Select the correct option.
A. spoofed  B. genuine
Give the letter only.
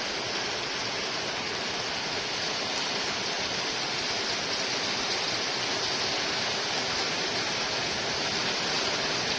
B